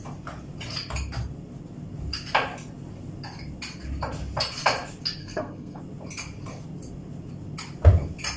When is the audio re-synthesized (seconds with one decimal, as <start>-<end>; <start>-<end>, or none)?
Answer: 5.2-5.8